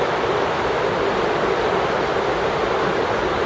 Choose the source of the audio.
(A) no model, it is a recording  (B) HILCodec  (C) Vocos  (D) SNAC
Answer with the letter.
A